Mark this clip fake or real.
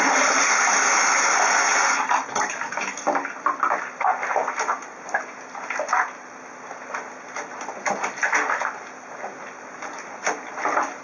real